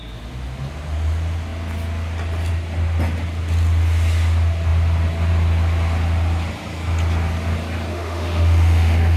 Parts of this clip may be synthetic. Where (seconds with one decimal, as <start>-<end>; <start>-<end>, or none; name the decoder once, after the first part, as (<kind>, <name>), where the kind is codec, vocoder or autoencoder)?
7.9-9.2 (autoencoder, DAC-VAE)